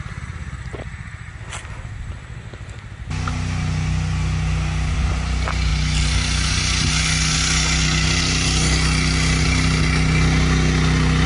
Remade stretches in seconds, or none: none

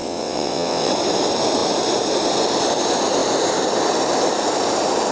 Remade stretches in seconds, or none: 0.0-0.9 (vocoder, WaveNeXt)

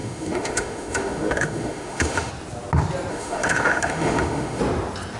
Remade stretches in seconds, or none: 0.0-2.3 (autoencoder, DAC-VAE); 3.1-4.6

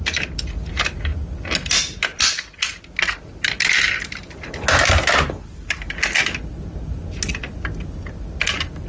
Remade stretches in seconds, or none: none

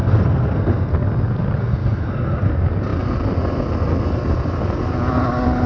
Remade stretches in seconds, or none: 0.0-0.9 (codec, SNAC); 1.6-2.5